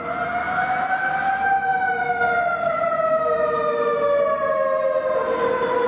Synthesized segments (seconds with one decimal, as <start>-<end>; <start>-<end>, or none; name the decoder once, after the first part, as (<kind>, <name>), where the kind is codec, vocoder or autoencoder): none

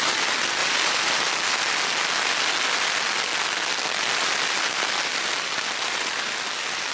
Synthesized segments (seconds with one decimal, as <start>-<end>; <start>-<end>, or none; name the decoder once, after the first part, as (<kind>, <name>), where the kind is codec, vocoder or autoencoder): 0.6-1.1 (vocoder, BigVGAN v2)

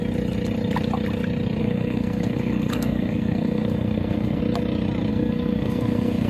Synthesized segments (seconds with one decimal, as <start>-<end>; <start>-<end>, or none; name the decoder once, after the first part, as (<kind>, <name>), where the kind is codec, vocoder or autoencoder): 1.6-4.4 (codec, SNAC); 5.1-6.3